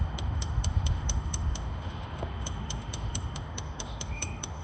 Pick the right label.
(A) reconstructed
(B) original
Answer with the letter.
A